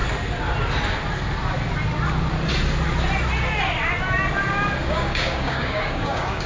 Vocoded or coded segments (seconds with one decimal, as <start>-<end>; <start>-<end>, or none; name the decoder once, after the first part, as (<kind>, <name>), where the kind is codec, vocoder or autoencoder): 4.8-6.5 (codec, DAC)